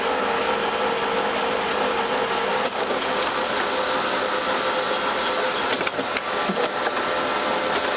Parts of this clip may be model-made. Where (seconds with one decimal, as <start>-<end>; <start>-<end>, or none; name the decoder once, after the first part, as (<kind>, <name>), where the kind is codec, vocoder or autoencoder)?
2.5-3.2 (codec, DAC)